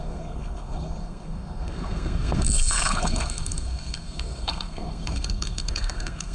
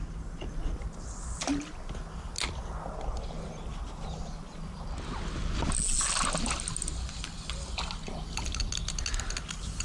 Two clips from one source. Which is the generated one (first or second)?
first